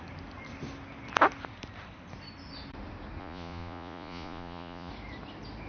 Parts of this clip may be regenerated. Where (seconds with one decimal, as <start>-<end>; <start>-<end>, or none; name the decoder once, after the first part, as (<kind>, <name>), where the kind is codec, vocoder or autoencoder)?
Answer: 3.2-4.9 (vocoder, Vocos)